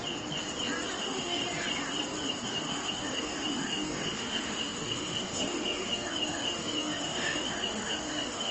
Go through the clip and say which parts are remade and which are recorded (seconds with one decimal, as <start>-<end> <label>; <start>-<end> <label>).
0.0-1.0 recorded; 1.0-1.4 remade; 1.4-2.5 recorded; 2.5-8.5 remade